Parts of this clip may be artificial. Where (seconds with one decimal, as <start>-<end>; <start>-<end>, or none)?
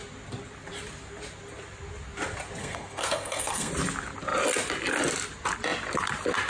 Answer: 2.6-3.7